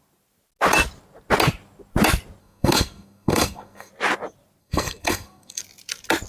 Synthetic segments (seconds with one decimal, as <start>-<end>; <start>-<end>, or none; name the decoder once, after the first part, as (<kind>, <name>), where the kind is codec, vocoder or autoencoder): 2.4-3.9 (codec, SNAC); 4.6-5.6